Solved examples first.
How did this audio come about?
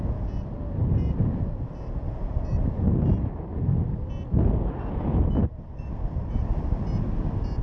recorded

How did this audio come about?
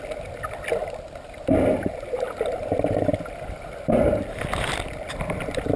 recorded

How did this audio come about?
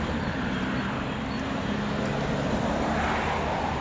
recorded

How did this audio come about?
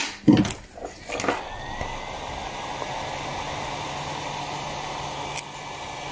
recorded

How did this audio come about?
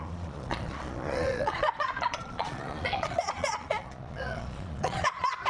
remade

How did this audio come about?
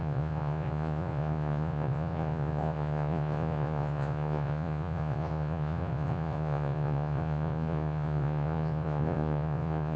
remade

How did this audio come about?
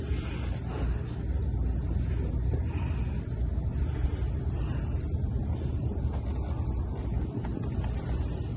recorded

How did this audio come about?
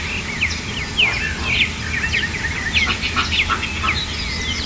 recorded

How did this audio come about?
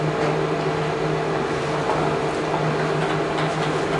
recorded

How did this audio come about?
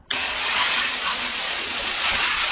remade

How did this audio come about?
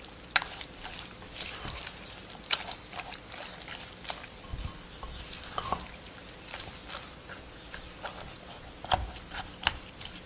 recorded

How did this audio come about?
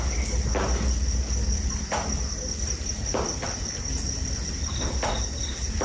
recorded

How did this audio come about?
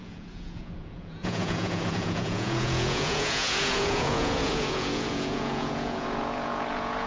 remade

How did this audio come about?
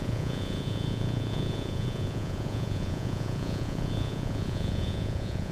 remade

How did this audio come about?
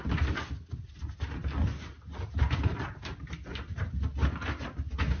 recorded